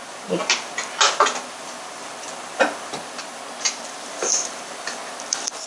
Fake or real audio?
real